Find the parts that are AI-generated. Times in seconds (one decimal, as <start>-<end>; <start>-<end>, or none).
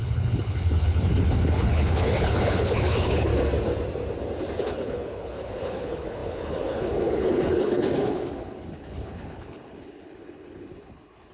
0.0-3.3; 4.6-11.3